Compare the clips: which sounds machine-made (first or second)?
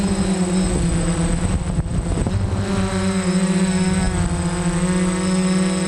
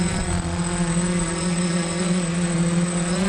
second